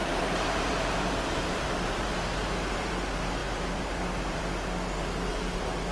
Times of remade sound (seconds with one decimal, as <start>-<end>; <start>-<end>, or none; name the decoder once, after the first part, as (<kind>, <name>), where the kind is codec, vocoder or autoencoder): 0.0-2.9 (vocoder, BigVGAN v2); 3.4-4.4